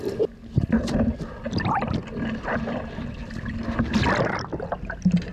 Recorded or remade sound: recorded